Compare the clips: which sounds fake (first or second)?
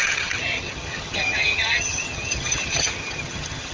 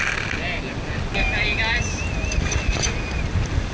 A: first